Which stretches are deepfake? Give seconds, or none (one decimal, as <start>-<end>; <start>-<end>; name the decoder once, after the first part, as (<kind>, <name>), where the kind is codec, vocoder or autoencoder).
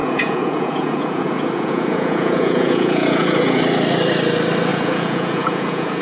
0.0-3.6 (vocoder, Vocos); 4.7-6.0